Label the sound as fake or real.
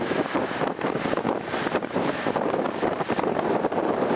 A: fake